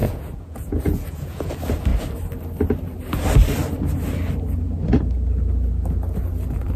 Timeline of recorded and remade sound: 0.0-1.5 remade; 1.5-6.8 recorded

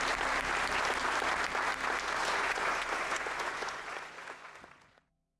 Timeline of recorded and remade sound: 0.0-2.2 recorded; 2.2-5.4 remade